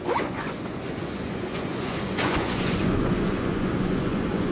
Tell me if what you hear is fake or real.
fake